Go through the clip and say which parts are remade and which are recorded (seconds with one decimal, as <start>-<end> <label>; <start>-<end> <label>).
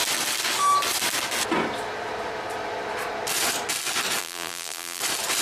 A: 0.0-4.2 recorded; 4.2-5.0 remade; 5.0-5.4 recorded